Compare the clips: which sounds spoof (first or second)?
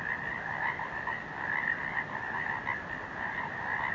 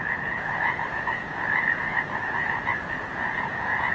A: second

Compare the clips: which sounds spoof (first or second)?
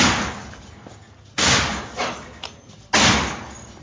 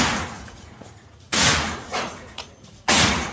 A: second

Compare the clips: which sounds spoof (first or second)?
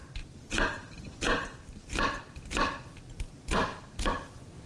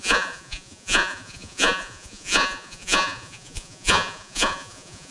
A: second